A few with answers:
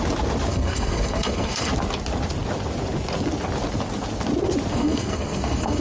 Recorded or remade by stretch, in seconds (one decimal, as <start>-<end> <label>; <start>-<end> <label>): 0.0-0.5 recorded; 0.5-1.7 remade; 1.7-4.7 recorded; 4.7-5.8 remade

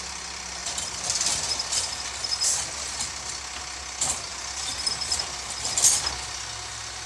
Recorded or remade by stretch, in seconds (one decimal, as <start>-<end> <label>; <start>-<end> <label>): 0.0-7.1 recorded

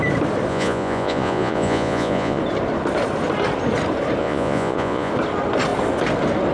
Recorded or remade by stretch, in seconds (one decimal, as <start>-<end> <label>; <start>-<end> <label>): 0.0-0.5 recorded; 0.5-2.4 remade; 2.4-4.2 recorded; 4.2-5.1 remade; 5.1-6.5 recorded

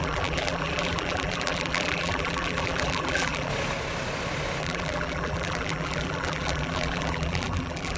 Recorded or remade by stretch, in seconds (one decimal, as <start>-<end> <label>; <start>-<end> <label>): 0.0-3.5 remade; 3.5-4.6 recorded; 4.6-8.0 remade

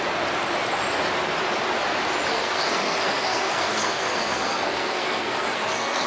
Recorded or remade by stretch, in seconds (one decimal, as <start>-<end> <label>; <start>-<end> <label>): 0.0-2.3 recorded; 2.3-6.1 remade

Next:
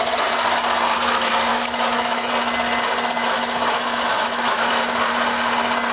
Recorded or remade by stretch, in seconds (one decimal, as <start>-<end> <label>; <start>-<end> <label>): 0.0-1.5 recorded; 1.5-2.3 remade; 2.3-3.2 recorded; 3.2-4.7 remade; 4.7-5.9 recorded

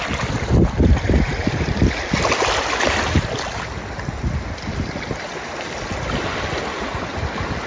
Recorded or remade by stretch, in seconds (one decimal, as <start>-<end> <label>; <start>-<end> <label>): 0.0-7.7 recorded

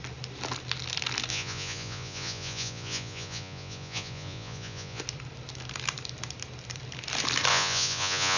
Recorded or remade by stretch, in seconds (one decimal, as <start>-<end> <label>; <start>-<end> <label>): 0.0-1.3 recorded; 1.3-5.0 remade; 5.0-7.5 recorded; 7.5-8.4 remade